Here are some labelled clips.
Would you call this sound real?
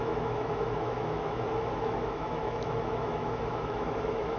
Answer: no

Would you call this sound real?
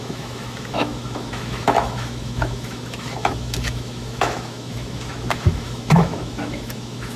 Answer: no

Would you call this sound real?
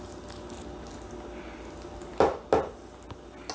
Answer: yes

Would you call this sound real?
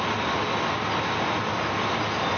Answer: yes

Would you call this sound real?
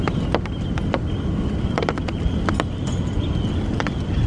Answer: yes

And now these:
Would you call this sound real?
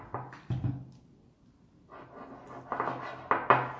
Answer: yes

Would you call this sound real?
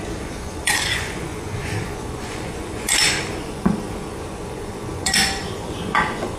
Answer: no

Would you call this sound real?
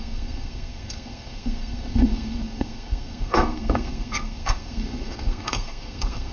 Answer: no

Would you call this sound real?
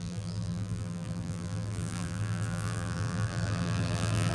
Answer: no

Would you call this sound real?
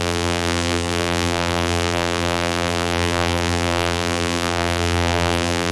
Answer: no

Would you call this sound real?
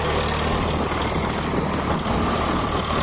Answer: yes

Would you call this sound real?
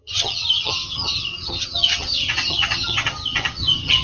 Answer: no